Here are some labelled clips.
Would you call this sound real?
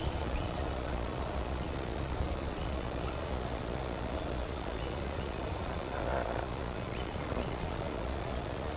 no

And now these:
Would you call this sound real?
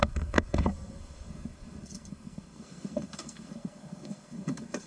no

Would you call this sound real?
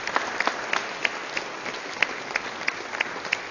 yes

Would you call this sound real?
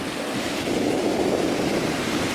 yes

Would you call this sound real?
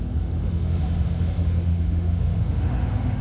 no